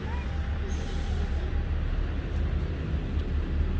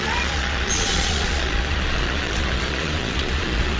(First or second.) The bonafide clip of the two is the first